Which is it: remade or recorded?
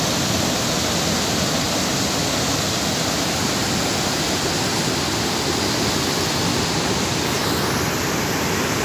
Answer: recorded